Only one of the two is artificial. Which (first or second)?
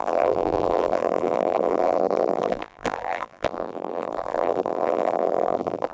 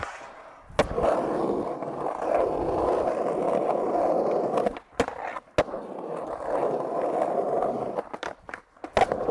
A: first